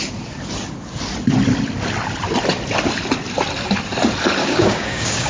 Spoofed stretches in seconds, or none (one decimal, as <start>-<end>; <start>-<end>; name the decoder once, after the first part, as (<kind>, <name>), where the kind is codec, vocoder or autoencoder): 4.4-5.3 (codec, DAC)